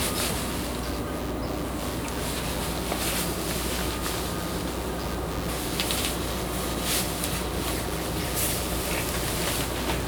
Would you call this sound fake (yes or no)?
no